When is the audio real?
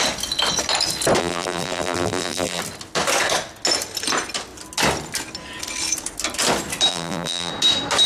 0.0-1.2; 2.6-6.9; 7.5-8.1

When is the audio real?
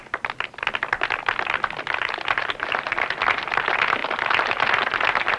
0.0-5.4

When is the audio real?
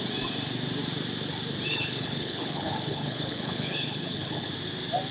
0.0-1.7; 4.5-5.1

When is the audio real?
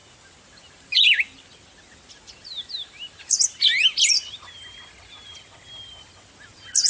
0.0-6.9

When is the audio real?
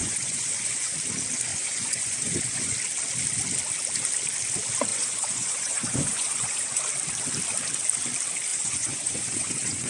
0.9-1.5; 2.7-4.9; 6.8-8.5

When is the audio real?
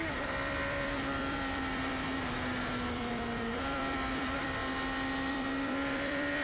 4.6-5.3